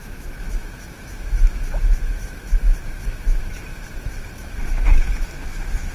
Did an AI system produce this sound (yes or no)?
yes